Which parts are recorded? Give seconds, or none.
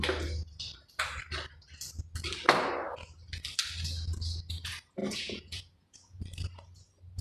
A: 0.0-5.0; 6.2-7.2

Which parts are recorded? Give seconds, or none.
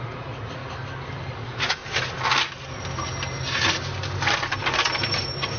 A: 0.6-1.3; 1.8-5.6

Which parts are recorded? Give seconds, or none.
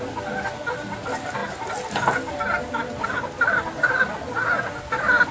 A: 0.0-5.3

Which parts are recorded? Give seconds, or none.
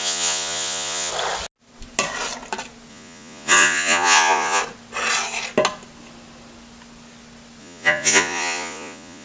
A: 1.1-2.9; 4.6-7.6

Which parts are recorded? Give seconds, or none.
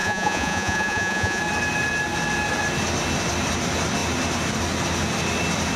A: 1.4-5.8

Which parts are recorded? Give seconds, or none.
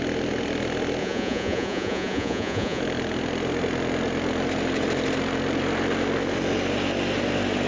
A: 0.0-1.0; 2.8-7.7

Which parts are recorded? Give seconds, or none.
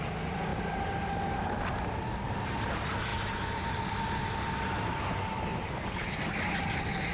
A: 0.0-7.1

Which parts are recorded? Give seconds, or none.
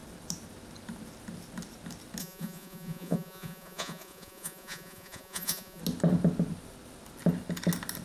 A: 0.0-2.2; 5.8-8.0